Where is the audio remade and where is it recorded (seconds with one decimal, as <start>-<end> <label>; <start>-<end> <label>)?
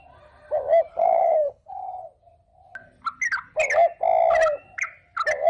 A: 0.0-0.9 recorded; 0.9-1.8 remade; 1.8-5.5 recorded